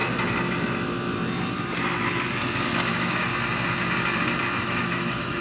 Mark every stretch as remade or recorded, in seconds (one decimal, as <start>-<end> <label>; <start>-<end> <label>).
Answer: 0.0-2.9 recorded; 2.9-3.3 remade; 3.3-4.6 recorded; 4.6-5.4 remade

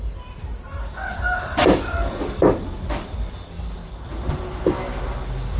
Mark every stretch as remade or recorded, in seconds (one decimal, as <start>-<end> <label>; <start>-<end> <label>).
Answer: 0.0-5.6 recorded

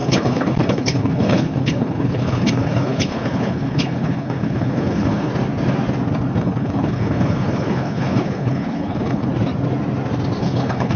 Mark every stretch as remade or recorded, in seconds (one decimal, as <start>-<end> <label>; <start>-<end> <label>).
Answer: 0.0-5.3 remade; 5.3-6.4 recorded; 6.4-9.3 remade; 9.3-10.4 recorded; 10.4-11.0 remade

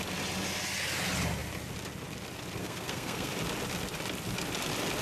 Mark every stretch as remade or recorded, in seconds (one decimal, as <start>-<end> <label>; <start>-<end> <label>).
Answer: 0.0-2.6 recorded; 2.6-3.3 remade; 3.3-5.0 recorded

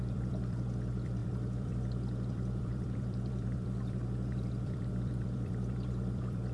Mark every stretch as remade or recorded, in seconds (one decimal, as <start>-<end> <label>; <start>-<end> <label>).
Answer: 0.0-6.5 remade